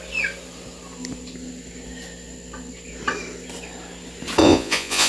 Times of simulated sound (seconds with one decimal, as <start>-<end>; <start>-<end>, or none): 4.4-5.1